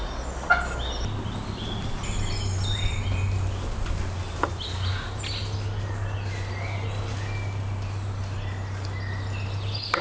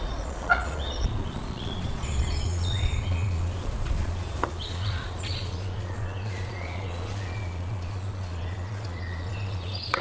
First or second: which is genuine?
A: first